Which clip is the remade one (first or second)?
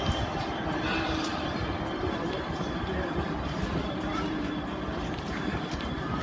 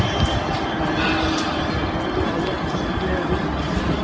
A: first